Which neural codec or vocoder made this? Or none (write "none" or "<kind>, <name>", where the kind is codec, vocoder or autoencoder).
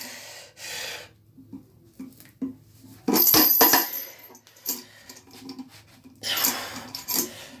none